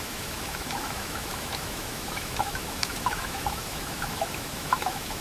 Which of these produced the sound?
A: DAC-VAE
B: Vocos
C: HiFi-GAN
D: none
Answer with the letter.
A